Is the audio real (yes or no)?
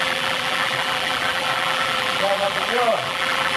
no